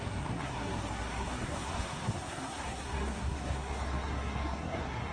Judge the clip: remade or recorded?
remade